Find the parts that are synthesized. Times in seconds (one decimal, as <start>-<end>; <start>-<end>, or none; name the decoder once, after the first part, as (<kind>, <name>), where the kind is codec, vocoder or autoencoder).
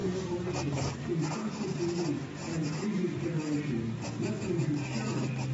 0.0-1.8 (vocoder, BigVGAN v2); 2.5-3.3